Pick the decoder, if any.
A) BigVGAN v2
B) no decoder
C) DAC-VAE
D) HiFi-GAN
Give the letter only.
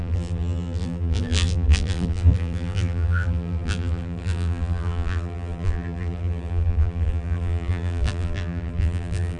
A